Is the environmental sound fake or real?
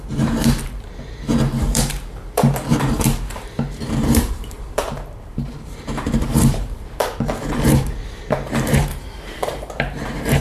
fake